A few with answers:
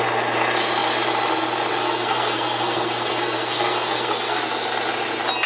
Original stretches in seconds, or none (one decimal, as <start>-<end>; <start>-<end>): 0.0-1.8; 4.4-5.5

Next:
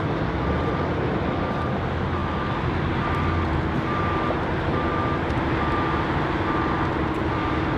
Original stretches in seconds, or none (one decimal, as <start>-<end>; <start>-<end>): 0.0-7.8

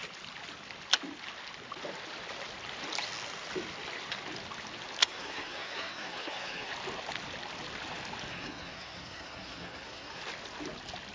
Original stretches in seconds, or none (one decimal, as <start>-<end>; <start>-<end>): 0.0-5.0; 6.7-8.3; 10.2-11.1

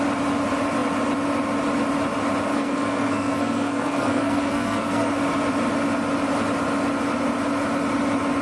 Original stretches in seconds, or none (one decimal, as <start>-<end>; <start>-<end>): 0.0-2.5; 5.1-8.4